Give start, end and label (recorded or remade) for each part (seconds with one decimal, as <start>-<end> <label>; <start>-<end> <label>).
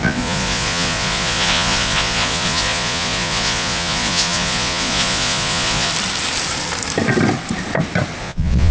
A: 0.0-5.9 remade; 5.9-8.2 recorded; 8.2-8.7 remade